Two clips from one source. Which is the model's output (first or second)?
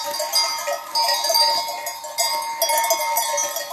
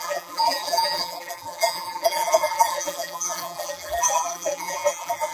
second